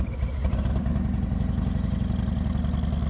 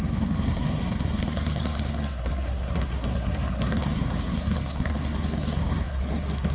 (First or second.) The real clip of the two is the first